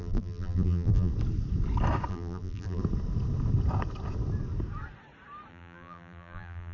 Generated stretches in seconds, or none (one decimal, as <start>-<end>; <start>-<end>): 0.0-1.1; 2.1-2.8; 5.5-6.7